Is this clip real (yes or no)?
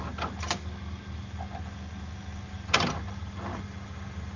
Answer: yes